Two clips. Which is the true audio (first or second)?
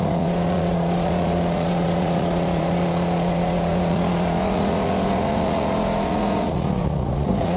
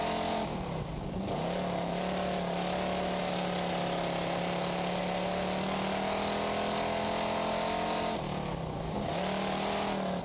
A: second